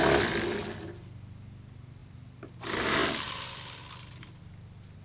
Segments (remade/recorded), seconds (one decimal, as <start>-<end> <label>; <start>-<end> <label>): 0.0-5.0 recorded